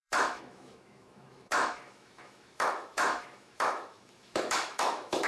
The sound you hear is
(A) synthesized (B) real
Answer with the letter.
A